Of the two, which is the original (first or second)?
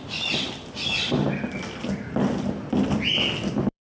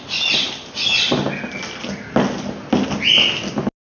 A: second